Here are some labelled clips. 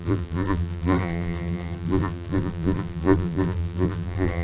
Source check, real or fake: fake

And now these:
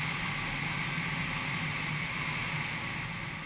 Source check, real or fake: real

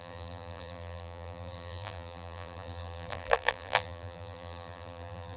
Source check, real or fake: fake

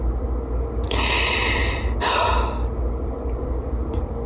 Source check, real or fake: real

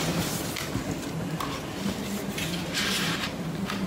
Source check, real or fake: real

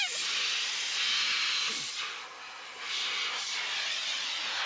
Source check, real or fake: real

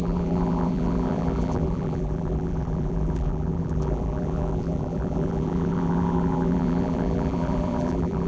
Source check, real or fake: fake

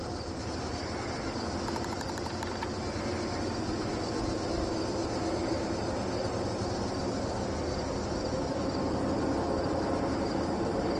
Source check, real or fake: real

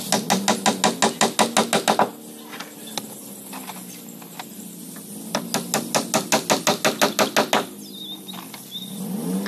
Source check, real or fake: real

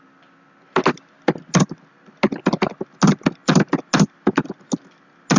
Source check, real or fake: real